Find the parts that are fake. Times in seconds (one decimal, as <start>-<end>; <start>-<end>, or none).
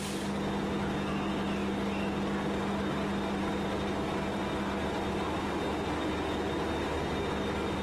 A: none